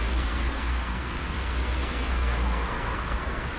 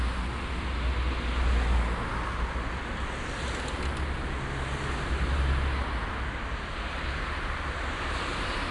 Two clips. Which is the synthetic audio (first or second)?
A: first